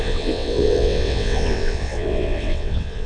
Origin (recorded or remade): remade